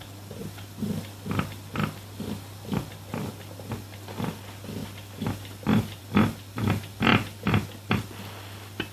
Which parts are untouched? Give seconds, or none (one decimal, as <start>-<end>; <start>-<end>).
0.0-0.4; 3.3-4.8; 6.0-7.1; 7.9-8.9